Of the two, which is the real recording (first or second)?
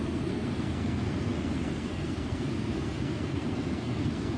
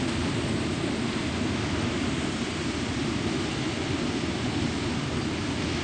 second